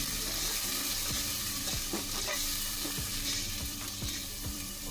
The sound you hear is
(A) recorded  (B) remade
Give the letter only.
B